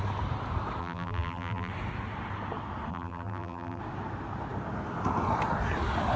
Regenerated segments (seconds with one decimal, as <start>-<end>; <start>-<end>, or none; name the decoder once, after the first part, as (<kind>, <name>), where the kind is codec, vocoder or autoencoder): 0.8-1.7 (vocoder, BigVGAN v2); 2.9-3.8